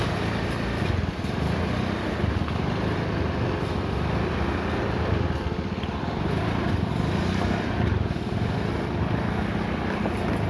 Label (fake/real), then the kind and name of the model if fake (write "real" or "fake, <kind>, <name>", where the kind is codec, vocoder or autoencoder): fake, vocoder, BigVGAN v2